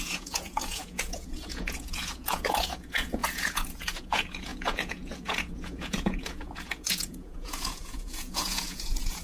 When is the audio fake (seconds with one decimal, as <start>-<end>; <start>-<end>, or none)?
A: 0.0-9.2